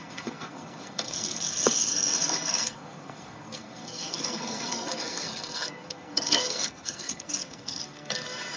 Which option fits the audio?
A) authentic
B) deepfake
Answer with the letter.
B